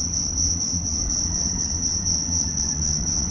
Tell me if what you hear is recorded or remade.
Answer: remade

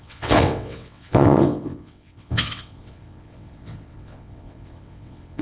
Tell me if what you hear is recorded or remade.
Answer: remade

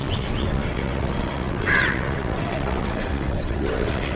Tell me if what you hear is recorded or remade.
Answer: remade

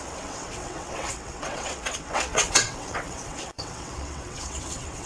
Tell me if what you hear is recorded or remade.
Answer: remade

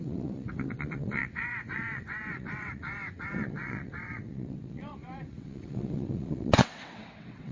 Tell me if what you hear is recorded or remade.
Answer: remade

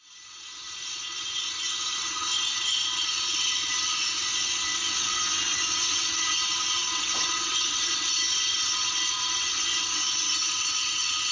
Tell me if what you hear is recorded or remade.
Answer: remade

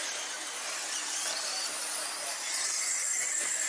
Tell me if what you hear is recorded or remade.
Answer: recorded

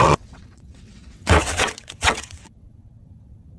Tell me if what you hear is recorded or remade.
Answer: remade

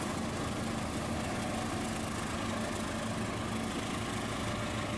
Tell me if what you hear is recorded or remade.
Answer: recorded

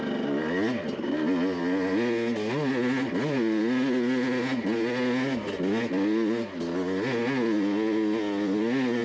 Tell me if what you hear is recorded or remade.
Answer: recorded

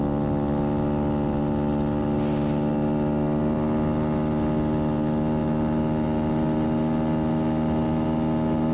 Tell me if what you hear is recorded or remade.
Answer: recorded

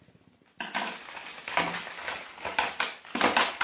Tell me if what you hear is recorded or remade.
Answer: recorded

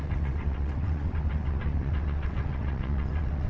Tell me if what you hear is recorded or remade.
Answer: remade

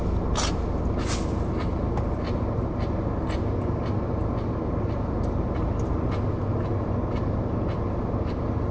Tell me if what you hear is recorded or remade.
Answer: recorded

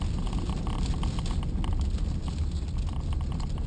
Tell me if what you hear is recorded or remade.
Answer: recorded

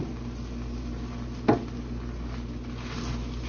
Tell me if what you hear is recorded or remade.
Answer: recorded